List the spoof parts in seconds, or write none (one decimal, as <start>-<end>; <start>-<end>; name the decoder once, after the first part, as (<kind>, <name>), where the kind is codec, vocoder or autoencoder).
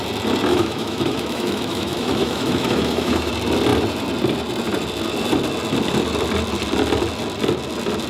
0.5-3.3 (autoencoder, DAC-VAE)